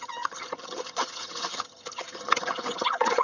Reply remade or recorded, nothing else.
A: remade